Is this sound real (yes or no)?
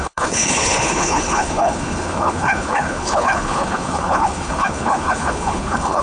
no